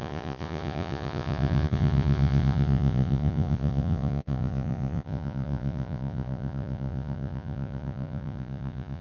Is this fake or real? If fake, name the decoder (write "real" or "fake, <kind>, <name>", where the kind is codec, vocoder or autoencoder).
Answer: fake, vocoder, Vocos